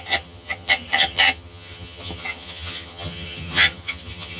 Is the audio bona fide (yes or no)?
no